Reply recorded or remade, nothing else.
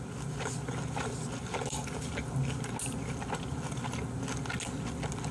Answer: recorded